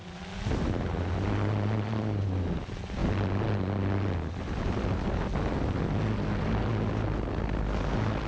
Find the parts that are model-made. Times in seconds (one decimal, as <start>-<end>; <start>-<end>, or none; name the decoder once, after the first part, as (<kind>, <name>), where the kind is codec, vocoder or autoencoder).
none